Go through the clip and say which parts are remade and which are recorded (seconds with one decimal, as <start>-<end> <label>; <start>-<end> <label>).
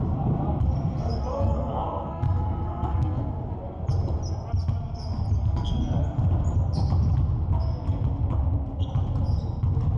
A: 0.0-1.3 recorded; 1.3-3.3 remade; 3.3-5.4 recorded; 5.4-6.0 remade; 6.0-10.0 recorded